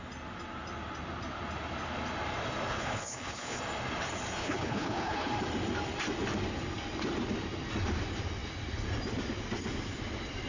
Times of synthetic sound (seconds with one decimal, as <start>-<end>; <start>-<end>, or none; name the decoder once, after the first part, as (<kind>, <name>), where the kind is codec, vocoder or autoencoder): 2.7-3.6 (codec, HILCodec); 4.4-5.3